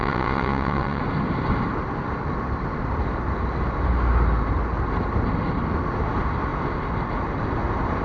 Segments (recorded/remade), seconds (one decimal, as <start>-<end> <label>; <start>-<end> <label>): 0.0-1.0 remade; 1.0-8.0 recorded